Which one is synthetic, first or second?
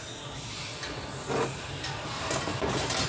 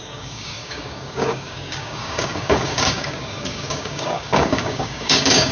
second